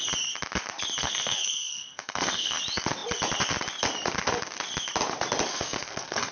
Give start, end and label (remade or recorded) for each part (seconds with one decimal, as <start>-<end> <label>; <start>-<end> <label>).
0.0-1.0 recorded; 1.0-2.6 remade; 2.6-5.5 recorded; 5.5-6.3 remade